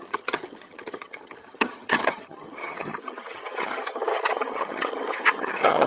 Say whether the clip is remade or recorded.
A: remade